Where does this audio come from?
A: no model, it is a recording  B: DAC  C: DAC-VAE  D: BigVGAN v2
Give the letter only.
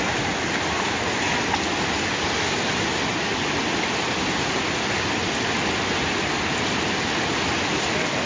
A